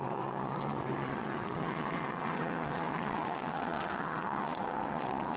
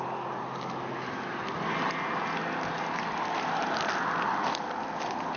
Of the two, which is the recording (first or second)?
second